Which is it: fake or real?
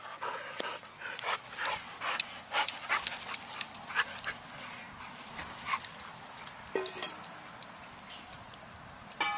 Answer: real